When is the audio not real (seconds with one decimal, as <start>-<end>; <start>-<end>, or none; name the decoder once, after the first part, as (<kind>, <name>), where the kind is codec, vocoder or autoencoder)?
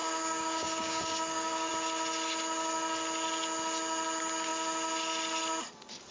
0.0-1.7 (codec, DAC)